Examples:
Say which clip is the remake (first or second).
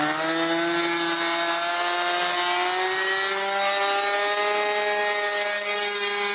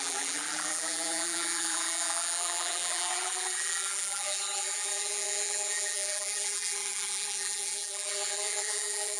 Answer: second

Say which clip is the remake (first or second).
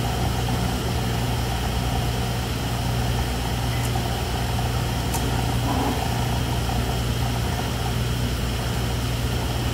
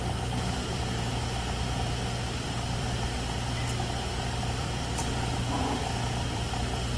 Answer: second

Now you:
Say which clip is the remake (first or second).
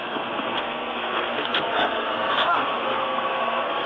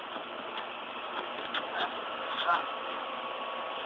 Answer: first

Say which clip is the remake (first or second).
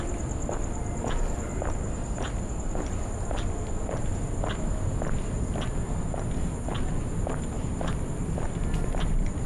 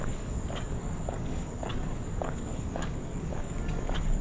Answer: second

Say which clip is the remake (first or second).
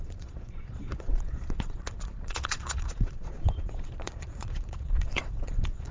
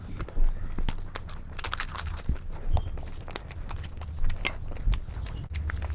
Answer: first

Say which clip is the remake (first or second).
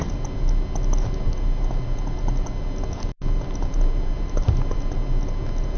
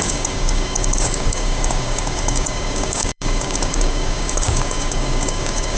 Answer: second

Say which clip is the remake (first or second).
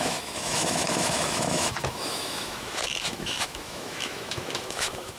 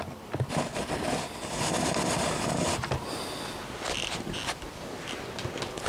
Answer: first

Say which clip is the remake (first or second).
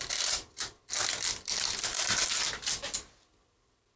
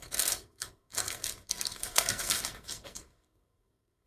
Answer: second